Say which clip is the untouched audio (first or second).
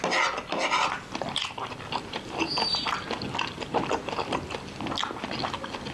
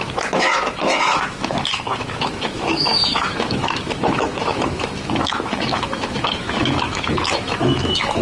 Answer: first